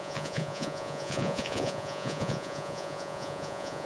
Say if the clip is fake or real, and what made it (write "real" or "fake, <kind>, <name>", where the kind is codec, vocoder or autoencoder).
fake, vocoder, Vocos